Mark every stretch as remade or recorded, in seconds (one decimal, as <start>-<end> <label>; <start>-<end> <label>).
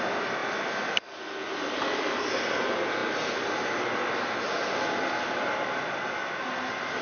0.0-7.0 recorded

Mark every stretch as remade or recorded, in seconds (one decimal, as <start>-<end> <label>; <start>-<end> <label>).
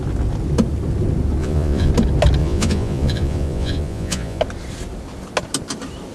0.0-1.4 recorded; 1.4-1.9 remade; 1.9-2.4 recorded; 2.4-4.4 remade; 4.4-6.1 recorded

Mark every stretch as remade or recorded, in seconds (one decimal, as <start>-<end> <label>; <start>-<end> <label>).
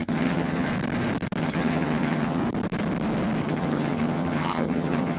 0.0-0.7 remade; 0.7-1.4 recorded; 1.4-2.4 remade; 2.4-3.4 recorded; 3.4-5.2 remade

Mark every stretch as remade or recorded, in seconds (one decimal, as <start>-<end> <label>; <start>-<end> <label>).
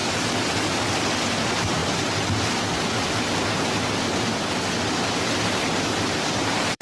0.0-1.3 recorded; 1.3-1.8 remade; 1.8-5.3 recorded; 5.3-6.8 remade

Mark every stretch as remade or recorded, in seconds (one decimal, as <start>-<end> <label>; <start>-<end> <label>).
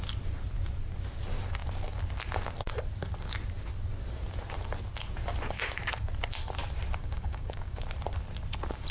0.0-7.0 recorded; 7.0-7.8 remade; 7.8-8.9 recorded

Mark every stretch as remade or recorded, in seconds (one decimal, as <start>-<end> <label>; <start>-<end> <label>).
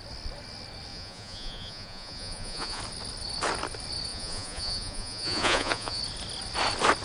0.0-0.9 recorded; 0.9-2.8 remade; 2.8-4.1 recorded; 4.1-6.0 remade; 6.0-7.0 recorded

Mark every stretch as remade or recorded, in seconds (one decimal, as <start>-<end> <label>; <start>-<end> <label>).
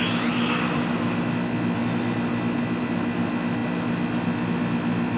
0.0-5.2 recorded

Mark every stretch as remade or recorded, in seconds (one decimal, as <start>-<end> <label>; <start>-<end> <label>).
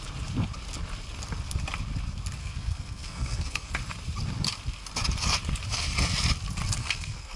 0.0-2.4 recorded; 2.4-3.7 remade; 3.7-6.8 recorded; 6.8-7.4 remade